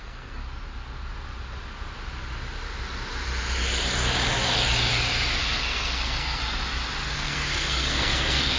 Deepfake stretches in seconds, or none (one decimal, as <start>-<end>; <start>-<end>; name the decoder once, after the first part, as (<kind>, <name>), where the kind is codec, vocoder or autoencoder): 0.0-0.4 (codec, SNAC); 5.4-6.4; 7.1-8.6